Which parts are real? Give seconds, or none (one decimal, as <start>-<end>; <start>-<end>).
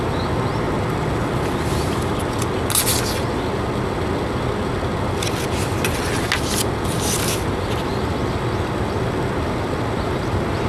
0.0-10.7